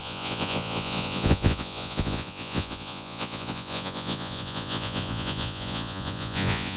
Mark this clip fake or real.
fake